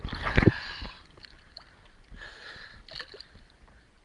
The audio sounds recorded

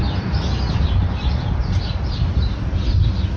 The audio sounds recorded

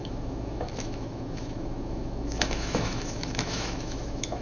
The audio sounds remade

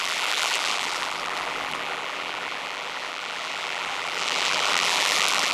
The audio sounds remade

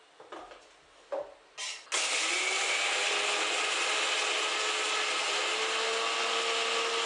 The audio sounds recorded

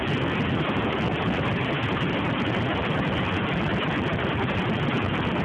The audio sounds recorded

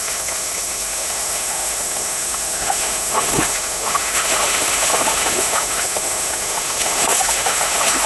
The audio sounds remade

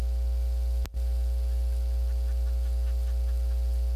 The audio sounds recorded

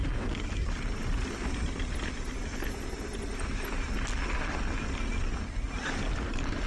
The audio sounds recorded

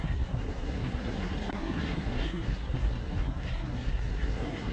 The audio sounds remade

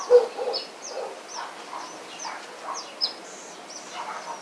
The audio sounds recorded